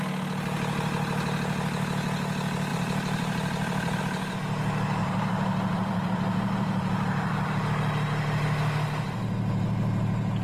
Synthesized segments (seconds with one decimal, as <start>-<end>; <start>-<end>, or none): 2.7-4.0; 5.0-7.6